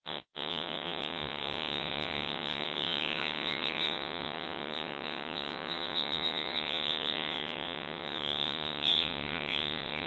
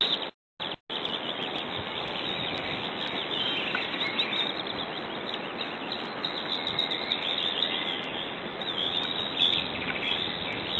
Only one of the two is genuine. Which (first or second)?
second